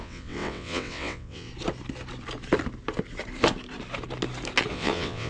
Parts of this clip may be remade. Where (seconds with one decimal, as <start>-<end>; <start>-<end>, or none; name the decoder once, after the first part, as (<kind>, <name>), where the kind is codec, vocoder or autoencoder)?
0.0-1.5 (vocoder, WaveNeXt); 4.7-5.3